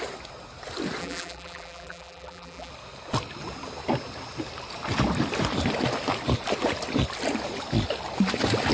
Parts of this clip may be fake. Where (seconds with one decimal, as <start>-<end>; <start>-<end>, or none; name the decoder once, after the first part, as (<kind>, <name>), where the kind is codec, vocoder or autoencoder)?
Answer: 1.0-2.7 (vocoder, BigVGAN v2)

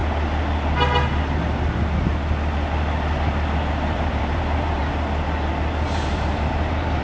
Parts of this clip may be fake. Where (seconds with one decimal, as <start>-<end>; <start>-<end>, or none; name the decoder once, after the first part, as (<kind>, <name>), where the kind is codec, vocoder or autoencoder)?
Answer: 3.7-4.8 (vocoder, BigVGAN v2); 5.7-7.0

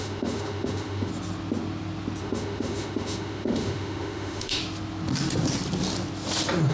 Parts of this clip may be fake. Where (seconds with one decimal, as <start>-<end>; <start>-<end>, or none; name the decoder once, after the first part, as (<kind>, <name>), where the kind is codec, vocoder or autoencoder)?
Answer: 0.0-1.1 (autoencoder, DAC-VAE); 2.2-4.6

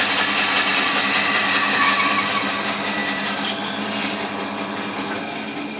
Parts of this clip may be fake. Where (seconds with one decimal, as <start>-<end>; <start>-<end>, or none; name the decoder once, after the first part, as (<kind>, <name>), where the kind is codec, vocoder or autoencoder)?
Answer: 3.0-3.7 (vocoder, BigVGAN v2)

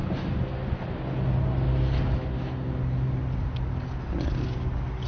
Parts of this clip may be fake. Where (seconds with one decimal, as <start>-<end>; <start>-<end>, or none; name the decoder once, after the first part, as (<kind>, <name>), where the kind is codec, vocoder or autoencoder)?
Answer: none

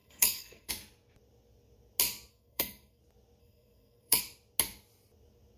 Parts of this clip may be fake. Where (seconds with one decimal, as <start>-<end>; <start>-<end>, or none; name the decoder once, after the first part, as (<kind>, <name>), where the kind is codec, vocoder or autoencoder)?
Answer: 0.0-0.7 (codec, SNAC); 2.3-3.0; 3.4-4.2